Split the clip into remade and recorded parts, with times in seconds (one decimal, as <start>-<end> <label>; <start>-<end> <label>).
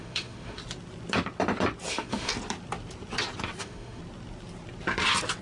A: 0.0-0.6 remade; 0.6-1.9 recorded; 1.9-2.3 remade; 2.3-3.6 recorded; 3.6-4.0 remade; 4.0-5.4 recorded